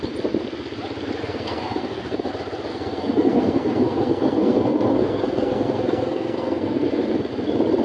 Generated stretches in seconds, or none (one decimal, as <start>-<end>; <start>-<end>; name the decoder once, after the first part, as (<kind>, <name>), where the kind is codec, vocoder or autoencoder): 1.2-2.3 (codec, SNAC); 2.7-7.3